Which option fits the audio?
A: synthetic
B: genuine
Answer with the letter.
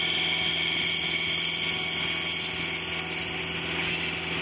B